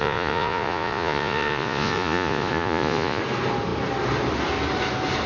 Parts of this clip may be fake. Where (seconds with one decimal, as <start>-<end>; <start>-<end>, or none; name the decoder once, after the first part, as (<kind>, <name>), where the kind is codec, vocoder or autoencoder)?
0.0-3.2 (vocoder, Vocos)